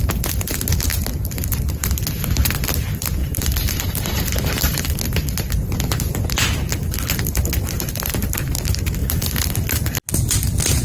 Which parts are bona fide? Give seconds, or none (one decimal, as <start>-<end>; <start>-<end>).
0.0-3.2; 5.0-6.7; 8.1-9.0; 10.2-10.8